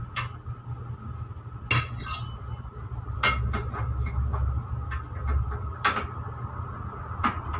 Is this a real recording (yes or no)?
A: yes